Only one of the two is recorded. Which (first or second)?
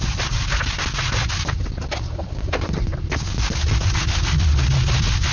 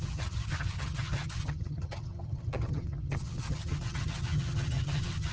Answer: first